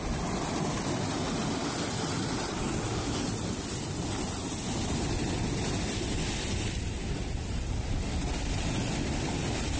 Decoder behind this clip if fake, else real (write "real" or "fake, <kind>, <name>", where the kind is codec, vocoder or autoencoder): real